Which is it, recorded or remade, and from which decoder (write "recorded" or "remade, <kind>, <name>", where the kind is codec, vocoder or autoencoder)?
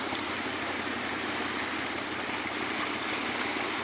recorded